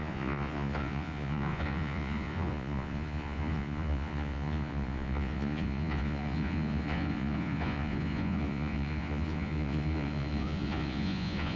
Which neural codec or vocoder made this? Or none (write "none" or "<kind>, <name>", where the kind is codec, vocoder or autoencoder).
vocoder, Vocos